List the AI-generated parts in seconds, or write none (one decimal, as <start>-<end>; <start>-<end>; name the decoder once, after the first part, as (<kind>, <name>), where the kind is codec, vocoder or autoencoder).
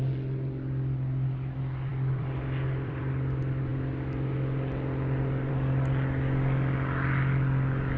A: 1.9-3.0 (vocoder, BigVGAN v2)